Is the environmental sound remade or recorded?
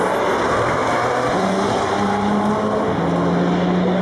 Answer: recorded